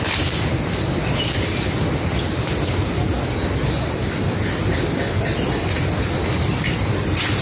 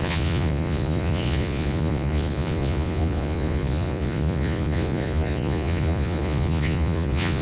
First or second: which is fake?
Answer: second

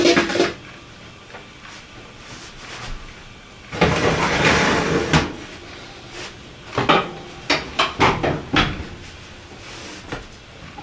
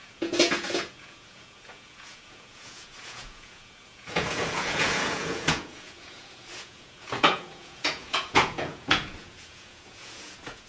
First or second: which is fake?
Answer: second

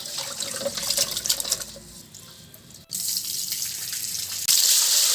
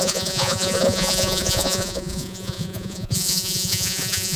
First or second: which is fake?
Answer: second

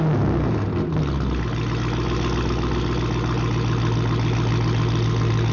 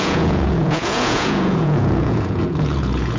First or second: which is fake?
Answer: second